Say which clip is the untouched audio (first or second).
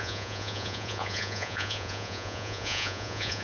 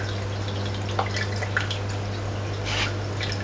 second